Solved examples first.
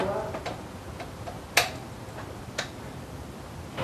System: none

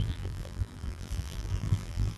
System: vocoder, BigVGAN v2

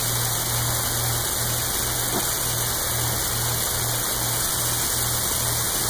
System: none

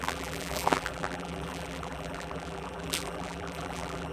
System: vocoder, BigVGAN v2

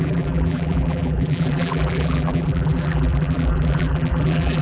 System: vocoder, BigVGAN v2